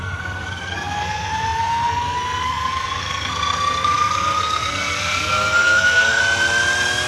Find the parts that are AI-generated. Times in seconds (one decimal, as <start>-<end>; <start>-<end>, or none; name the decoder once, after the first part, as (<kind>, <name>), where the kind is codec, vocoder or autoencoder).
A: 0.0-6.2 (codec, SNAC)